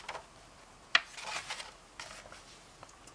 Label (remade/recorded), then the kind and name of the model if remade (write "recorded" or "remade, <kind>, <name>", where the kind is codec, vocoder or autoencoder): recorded